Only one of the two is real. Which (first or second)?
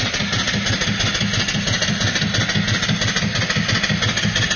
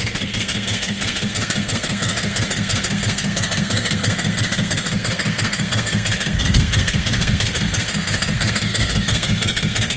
first